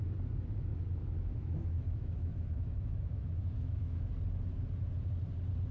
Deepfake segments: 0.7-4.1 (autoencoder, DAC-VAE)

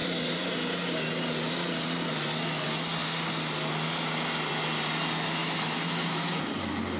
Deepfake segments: 5.4-6.4 (autoencoder, DAC-VAE)

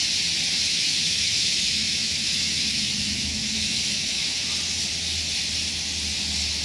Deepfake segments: 0.5-4.5 (autoencoder, DAC-VAE)

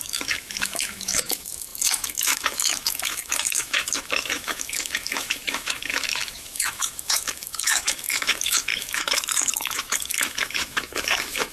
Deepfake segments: 0.0-11.5 (autoencoder, DAC-VAE)

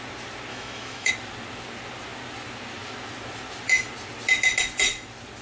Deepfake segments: 0.5-1.1 (autoencoder, DAC-VAE)

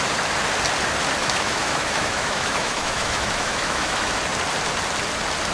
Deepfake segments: 1.2-4.2 (autoencoder, DAC-VAE)